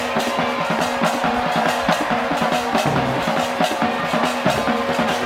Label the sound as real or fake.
real